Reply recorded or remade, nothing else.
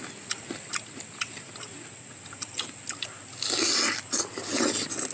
recorded